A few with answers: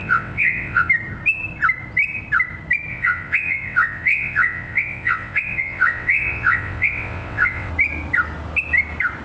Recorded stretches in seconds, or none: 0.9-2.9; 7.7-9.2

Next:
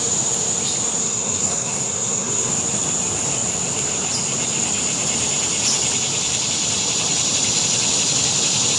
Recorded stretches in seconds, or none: 0.0-1.0; 2.5-8.8

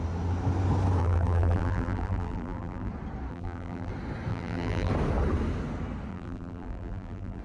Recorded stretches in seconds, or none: 0.0-1.0; 2.9-3.3; 3.9-4.3; 4.9-6.1

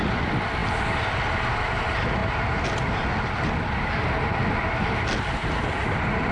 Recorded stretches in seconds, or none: 0.0-6.3

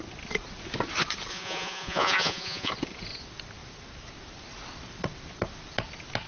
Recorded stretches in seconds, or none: 0.0-1.3; 2.7-6.3

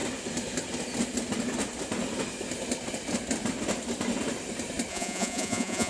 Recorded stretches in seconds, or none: 0.0-4.9